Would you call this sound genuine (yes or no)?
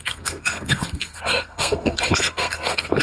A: no